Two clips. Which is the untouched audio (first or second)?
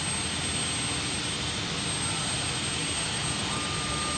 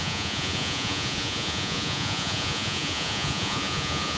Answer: first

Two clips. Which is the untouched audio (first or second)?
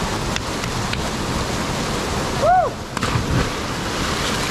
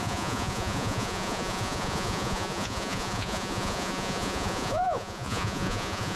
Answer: first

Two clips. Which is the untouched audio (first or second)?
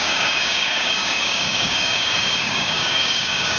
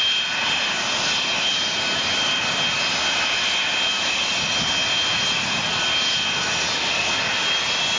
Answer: second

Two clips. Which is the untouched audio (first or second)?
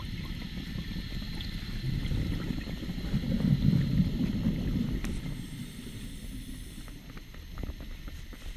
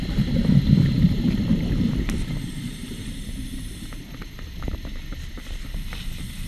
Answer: first